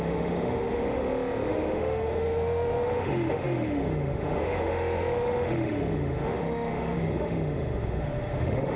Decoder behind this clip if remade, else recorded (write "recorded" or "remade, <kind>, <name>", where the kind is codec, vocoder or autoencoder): remade, autoencoder, DAC-VAE